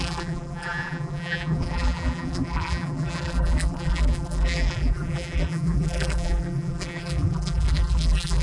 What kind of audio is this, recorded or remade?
remade